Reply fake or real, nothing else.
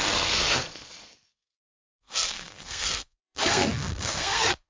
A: fake